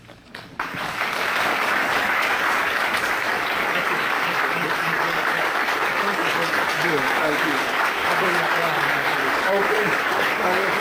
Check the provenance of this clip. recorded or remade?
remade